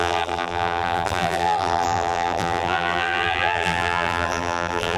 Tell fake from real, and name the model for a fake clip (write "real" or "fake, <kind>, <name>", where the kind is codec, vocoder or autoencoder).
fake, vocoder, BigVGAN v2